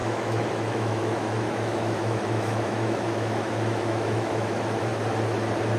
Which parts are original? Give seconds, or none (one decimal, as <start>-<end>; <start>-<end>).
4.9-5.8